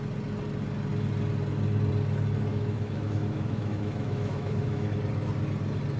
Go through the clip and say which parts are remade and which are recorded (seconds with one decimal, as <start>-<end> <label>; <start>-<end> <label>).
0.0-2.5 recorded; 2.5-4.9 remade; 4.9-6.0 recorded